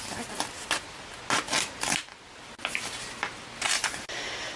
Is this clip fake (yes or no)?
no